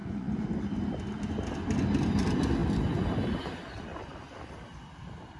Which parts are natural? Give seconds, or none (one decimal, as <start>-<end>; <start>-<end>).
0.5-5.4